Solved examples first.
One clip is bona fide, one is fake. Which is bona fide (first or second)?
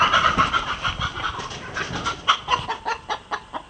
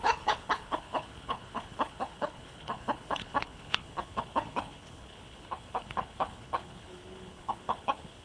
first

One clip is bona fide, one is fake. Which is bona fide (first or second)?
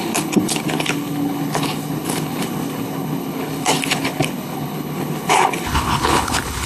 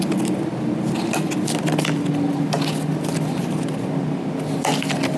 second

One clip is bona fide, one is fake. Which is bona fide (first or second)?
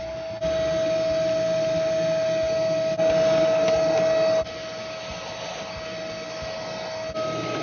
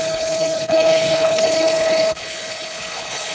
first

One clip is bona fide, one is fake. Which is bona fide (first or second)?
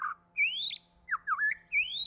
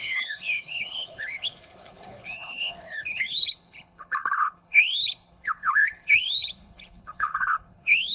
first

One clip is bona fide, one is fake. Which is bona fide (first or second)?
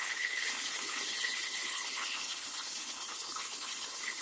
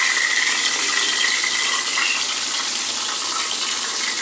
second